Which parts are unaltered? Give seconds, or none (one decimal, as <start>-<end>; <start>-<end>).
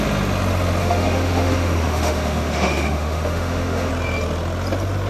0.0-0.8; 3.9-5.1